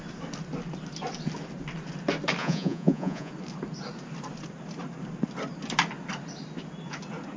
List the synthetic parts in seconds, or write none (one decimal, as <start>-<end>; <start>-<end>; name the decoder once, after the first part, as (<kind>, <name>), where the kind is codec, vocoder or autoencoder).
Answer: 2.4-3.3 (vocoder, Vocos)